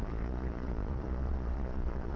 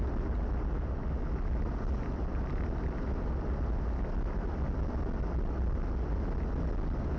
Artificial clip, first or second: first